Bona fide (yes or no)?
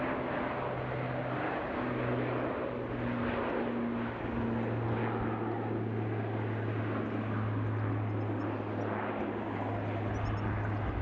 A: yes